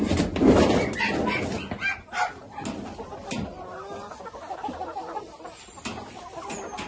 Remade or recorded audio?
recorded